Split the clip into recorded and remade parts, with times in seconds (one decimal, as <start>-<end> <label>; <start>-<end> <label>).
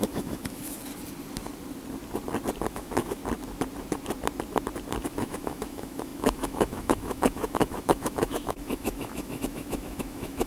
0.0-0.8 remade; 0.8-2.7 recorded; 2.7-3.2 remade; 3.2-5.0 recorded; 5.0-10.5 remade